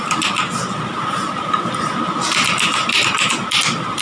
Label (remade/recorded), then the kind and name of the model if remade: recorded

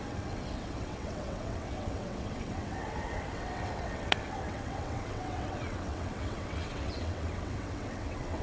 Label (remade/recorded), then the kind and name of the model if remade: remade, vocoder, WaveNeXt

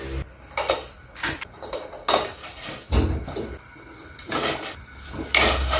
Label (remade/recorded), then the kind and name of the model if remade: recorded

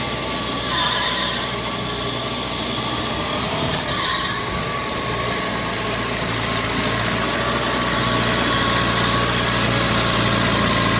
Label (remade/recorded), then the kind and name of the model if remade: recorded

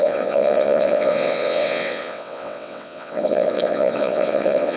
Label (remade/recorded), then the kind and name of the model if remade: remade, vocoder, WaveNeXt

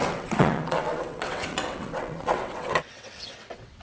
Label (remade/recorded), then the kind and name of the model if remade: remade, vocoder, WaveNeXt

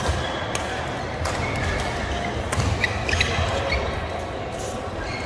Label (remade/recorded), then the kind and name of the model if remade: recorded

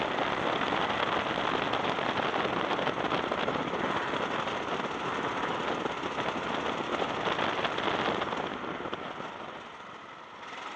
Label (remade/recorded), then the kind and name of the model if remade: recorded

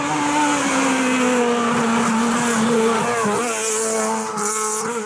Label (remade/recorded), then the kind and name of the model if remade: recorded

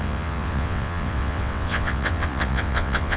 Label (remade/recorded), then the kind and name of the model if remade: remade, vocoder, WaveNeXt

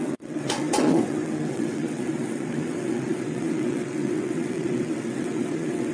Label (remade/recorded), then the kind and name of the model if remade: remade, vocoder, WaveNeXt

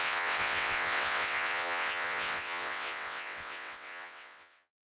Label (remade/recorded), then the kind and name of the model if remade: remade, vocoder, WaveNeXt